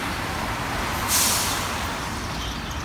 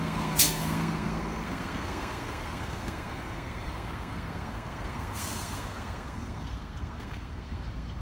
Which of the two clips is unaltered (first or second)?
first